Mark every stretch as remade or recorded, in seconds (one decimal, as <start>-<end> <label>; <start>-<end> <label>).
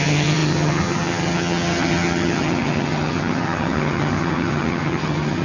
0.0-5.4 remade